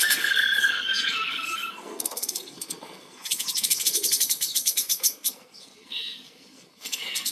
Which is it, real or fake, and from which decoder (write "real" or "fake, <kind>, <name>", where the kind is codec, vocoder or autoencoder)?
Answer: fake, codec, SNAC